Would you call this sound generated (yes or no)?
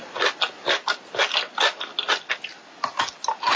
no